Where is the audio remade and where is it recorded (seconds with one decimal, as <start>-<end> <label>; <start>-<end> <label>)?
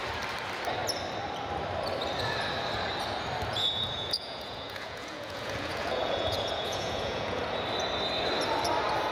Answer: 0.0-3.5 recorded; 3.5-7.4 remade; 7.4-9.1 recorded